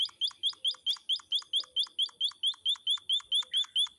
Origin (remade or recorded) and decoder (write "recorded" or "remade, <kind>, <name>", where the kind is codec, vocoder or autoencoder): recorded